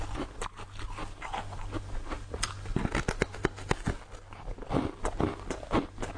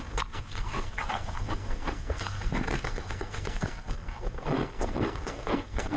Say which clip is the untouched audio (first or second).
first